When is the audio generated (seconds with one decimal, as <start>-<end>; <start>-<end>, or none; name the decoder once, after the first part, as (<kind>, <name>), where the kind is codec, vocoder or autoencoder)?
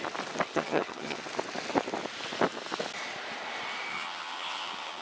0.5-1.2 (vocoder, HiFi-GAN); 3.9-5.0